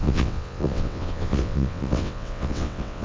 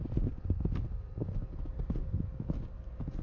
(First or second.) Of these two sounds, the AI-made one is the first